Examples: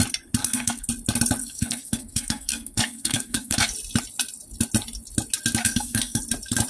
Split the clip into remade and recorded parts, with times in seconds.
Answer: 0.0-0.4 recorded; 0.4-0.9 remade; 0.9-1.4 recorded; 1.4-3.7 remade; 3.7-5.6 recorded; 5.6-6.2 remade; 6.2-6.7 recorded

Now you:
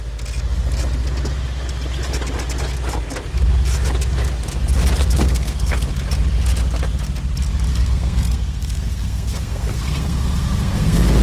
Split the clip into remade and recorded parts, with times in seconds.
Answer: 0.0-5.0 recorded; 5.0-5.9 remade; 5.9-7.7 recorded; 7.7-11.2 remade

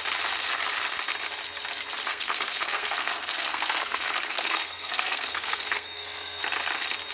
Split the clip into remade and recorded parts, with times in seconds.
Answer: 0.0-2.1 recorded; 2.1-6.4 remade; 6.4-7.1 recorded

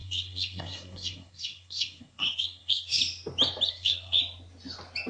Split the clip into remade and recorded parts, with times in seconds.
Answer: 0.0-3.0 remade; 3.0-3.7 recorded; 3.7-4.2 remade; 4.2-5.1 recorded

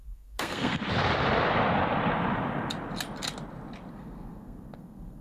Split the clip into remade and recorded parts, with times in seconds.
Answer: 0.0-0.8 remade; 0.8-3.9 recorded; 3.9-5.2 remade